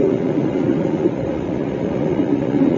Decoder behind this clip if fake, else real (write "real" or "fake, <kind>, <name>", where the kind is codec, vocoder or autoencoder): fake, vocoder, Vocos